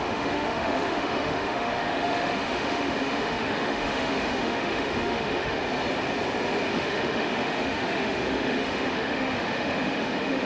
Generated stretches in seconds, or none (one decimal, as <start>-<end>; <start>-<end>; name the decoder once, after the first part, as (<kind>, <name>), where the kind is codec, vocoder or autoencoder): 0.0-5.6 (autoencoder, DAC-VAE); 6.7-10.5